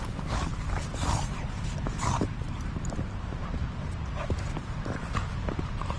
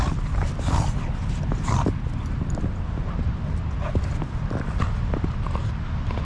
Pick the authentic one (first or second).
second